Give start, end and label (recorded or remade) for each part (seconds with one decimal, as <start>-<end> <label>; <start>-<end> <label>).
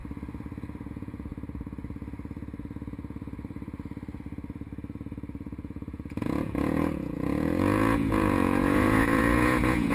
0.0-0.9 recorded; 0.9-1.3 remade; 1.3-5.4 recorded; 5.4-9.9 remade